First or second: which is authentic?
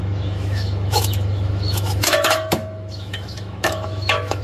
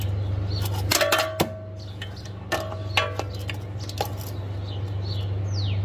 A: second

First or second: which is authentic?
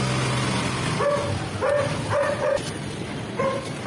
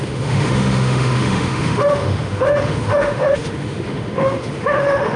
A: first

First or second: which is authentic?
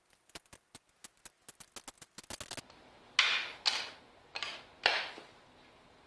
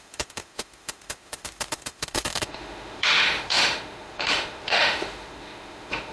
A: first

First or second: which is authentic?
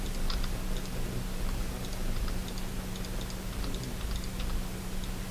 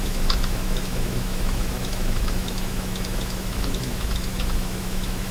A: first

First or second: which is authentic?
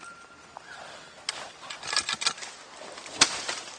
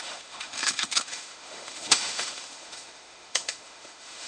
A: first